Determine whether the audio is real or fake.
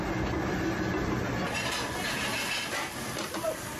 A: real